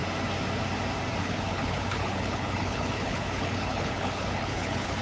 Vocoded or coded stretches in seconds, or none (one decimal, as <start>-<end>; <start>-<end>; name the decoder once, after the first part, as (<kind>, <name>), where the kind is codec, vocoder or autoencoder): 1.2-5.0 (codec, HILCodec)